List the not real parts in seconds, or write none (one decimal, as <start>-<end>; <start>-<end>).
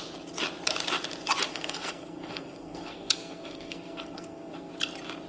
1.5-4.7